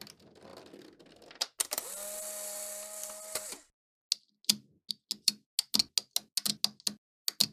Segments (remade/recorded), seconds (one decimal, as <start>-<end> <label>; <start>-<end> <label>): 0.0-7.5 recorded